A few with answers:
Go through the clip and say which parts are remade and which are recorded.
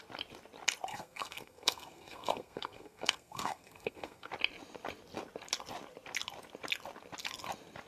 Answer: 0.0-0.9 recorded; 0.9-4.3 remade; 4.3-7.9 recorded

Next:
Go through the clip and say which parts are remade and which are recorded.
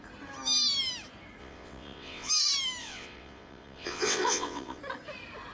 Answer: 0.0-1.4 recorded; 1.4-2.3 remade; 2.3-2.8 recorded; 2.8-4.8 remade; 4.8-5.5 recorded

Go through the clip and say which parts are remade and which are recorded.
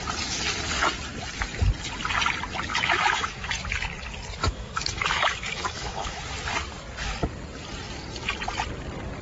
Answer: 0.0-2.7 recorded; 2.7-3.5 remade; 3.5-4.4 recorded; 4.4-6.2 remade; 6.2-9.2 recorded